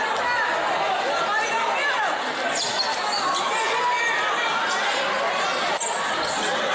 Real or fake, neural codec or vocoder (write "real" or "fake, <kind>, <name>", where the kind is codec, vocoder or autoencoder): real